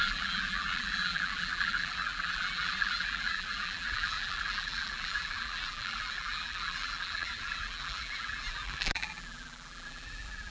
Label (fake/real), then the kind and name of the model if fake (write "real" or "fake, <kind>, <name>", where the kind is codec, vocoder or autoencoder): fake, vocoder, BigVGAN v2